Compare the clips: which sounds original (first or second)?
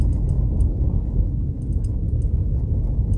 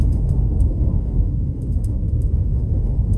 first